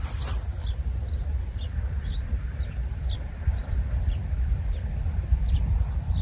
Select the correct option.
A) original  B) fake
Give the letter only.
A